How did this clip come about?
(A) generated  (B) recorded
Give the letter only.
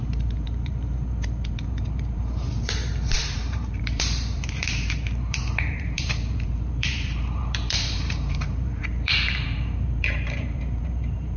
A